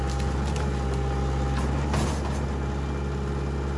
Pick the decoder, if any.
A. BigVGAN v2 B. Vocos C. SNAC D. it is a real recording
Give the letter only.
D